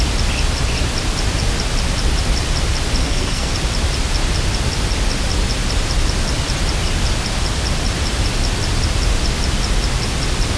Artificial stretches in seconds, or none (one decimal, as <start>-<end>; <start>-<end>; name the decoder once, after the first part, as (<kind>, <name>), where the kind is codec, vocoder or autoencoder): 3.0-3.5 (codec, SNAC)